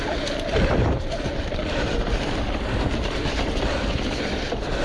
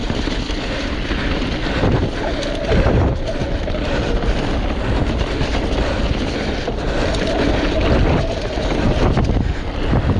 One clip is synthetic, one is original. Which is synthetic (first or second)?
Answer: first